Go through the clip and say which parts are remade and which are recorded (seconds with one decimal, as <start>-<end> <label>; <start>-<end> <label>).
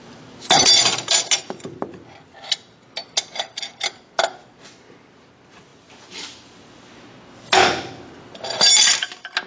0.0-9.5 recorded